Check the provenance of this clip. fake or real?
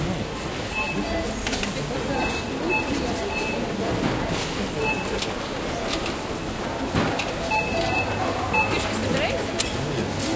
real